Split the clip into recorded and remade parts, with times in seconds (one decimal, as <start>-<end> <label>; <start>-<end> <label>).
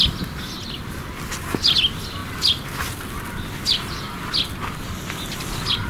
0.0-5.9 recorded